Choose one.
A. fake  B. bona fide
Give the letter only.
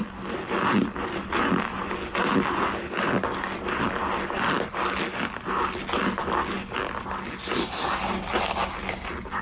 B